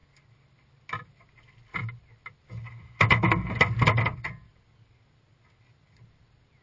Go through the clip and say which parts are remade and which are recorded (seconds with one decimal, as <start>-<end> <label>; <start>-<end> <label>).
0.0-6.6 recorded